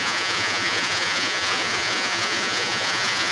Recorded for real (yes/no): no